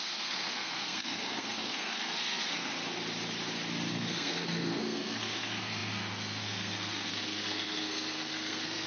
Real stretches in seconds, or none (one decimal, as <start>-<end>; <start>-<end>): 2.7-3.9